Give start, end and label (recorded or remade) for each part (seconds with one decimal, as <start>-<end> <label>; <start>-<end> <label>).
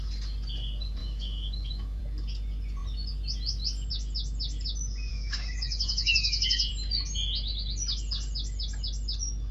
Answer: 0.0-1.0 recorded; 1.0-2.0 remade; 2.0-5.1 recorded; 5.1-6.7 remade; 6.7-9.5 recorded